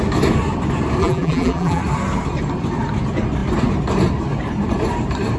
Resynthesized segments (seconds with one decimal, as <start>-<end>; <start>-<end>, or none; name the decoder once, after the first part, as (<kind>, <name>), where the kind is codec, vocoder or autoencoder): 1.0-1.8 (vocoder, BigVGAN v2)